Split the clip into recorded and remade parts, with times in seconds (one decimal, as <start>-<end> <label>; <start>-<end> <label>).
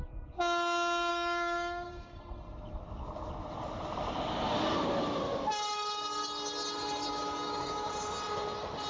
0.0-1.1 recorded; 1.1-2.2 remade; 2.2-7.1 recorded; 7.1-7.9 remade; 7.9-8.9 recorded